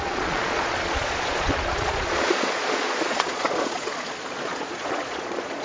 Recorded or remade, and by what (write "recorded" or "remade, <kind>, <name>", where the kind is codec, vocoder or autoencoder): remade, vocoder, Vocos